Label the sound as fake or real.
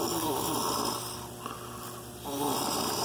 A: real